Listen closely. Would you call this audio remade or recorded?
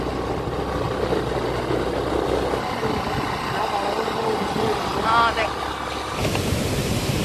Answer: recorded